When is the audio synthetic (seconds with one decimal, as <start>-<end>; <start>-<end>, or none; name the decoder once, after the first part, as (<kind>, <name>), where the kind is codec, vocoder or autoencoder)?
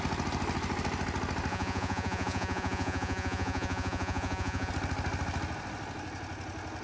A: 1.5-4.7 (vocoder, Vocos)